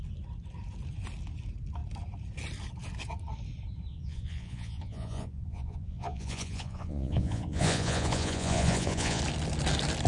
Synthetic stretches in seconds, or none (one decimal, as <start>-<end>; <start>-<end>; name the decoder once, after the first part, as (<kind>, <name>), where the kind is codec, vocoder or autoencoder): 3.9-9.2 (vocoder, Vocos)